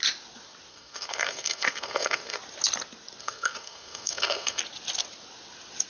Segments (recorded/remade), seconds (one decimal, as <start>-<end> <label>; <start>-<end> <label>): 0.0-0.7 recorded; 0.7-2.4 remade; 2.4-3.2 recorded; 3.2-4.6 remade; 4.6-5.9 recorded